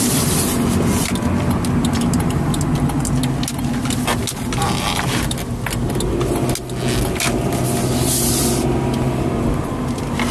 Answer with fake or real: real